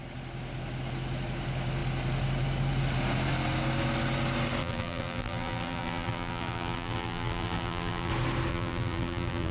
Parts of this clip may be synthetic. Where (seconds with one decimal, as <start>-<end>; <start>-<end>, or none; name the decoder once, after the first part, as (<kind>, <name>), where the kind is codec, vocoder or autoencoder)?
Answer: 4.6-8.1 (vocoder, BigVGAN v2); 8.5-9.5